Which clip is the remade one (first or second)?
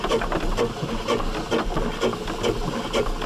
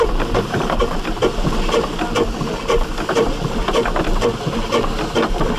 second